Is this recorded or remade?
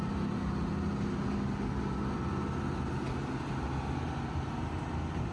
recorded